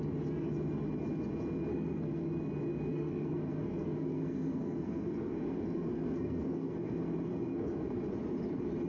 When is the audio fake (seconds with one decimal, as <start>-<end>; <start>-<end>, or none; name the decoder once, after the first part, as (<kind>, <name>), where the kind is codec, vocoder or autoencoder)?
1.7-2.3 (codec, SNAC); 2.9-8.1